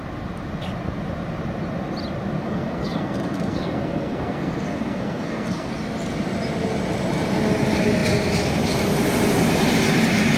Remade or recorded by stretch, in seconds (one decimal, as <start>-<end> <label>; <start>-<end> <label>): 0.0-2.4 recorded; 2.4-5.7 remade; 5.7-10.4 recorded